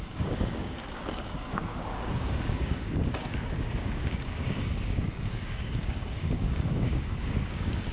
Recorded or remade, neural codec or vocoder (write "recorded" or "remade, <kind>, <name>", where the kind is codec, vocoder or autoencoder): remade, codec, DAC